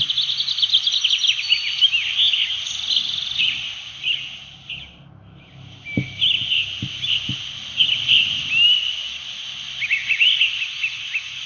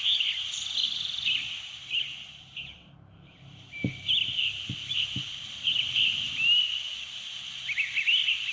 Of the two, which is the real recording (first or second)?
first